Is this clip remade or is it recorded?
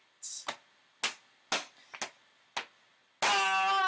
recorded